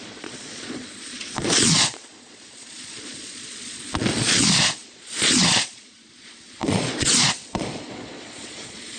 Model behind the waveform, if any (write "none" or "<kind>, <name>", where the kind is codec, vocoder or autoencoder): vocoder, Vocos